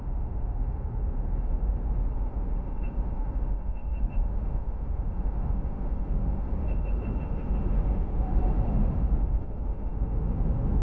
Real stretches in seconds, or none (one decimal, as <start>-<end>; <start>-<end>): none